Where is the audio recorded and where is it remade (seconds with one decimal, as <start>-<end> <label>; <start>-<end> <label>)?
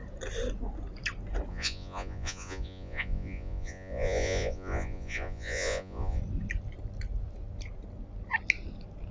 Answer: 0.0-1.5 recorded; 1.5-6.2 remade; 6.2-9.1 recorded